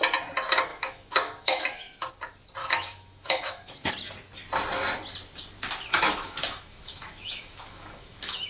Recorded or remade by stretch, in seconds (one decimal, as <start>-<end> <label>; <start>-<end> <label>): 0.0-0.7 recorded; 0.7-2.1 remade; 2.1-2.6 recorded; 2.6-3.9 remade; 3.9-5.9 recorded; 5.9-8.5 remade

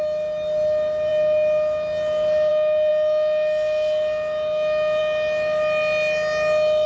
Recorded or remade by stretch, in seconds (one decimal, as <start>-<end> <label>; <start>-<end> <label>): 0.0-6.9 recorded

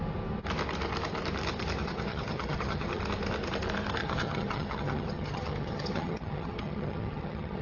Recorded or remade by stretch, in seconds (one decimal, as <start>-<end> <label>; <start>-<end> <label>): 0.0-1.8 recorded; 1.8-3.0 remade; 3.0-4.0 recorded; 4.0-7.6 remade

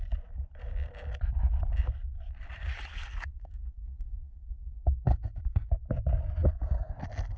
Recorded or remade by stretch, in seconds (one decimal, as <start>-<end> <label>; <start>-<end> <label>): 0.0-2.9 recorded; 2.9-5.7 remade; 5.7-7.4 recorded